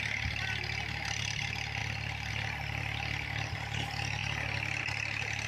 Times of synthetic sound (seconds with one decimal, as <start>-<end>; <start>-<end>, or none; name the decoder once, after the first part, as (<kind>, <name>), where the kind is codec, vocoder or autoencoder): none